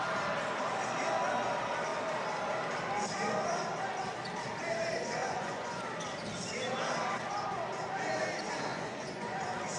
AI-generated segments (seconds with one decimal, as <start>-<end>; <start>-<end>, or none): 5.2-5.8; 8.7-9.4